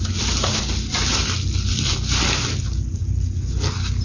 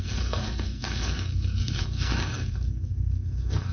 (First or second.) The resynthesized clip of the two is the second